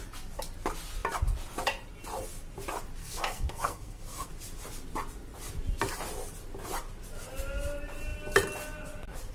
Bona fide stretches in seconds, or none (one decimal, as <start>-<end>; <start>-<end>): 0.0-3.0; 4.3-9.3

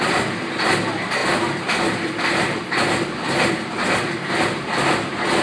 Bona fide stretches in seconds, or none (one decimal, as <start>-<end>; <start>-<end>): 0.0-5.4

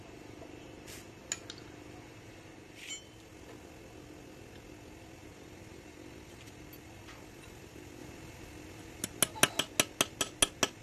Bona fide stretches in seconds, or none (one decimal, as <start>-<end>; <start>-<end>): 0.0-10.8

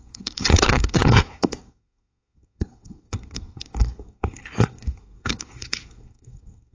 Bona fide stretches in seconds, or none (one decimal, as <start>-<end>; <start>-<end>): none